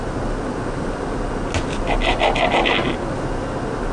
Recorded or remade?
recorded